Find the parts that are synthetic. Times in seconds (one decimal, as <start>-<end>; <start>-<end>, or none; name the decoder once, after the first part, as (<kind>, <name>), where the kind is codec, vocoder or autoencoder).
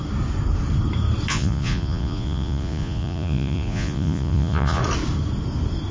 1.3-4.8 (vocoder, Vocos)